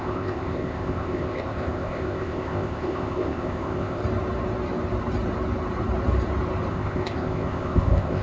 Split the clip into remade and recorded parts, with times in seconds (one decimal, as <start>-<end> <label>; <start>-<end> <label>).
0.0-4.0 remade; 4.0-6.7 recorded; 6.7-8.2 remade